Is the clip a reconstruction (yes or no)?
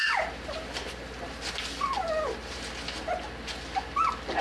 no